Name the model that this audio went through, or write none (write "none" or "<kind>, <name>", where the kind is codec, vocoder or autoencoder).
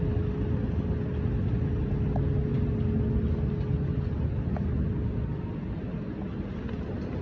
none